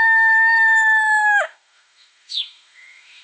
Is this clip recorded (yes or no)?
no